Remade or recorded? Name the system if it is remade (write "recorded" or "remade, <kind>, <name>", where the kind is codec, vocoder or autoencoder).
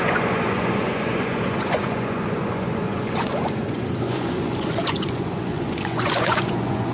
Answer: remade, vocoder, Vocos